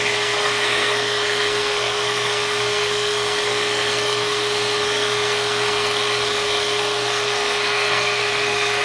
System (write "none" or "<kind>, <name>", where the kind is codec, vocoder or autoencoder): codec, SNAC